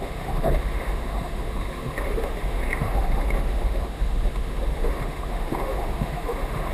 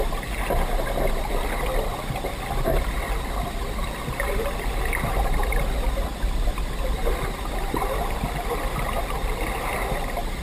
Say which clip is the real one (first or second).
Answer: second